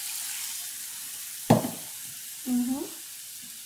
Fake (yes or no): no